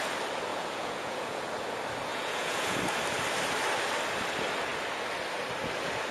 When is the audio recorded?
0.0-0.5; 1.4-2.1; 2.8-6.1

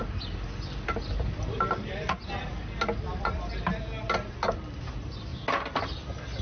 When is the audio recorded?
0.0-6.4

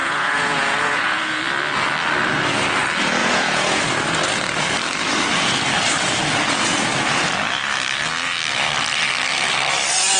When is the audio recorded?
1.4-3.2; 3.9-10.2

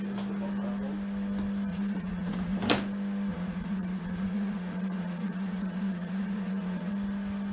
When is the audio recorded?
0.0-1.7; 2.6-3.3; 6.9-7.5

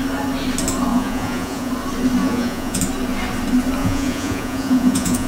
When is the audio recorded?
0.0-0.9; 1.7-2.2; 2.8-3.8

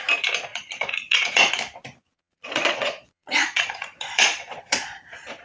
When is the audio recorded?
0.0-0.5; 1.5-2.0